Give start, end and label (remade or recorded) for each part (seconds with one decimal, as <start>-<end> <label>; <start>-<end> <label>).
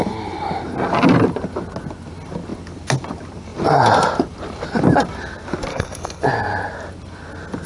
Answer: 0.0-5.7 recorded; 5.7-6.2 remade; 6.2-7.7 recorded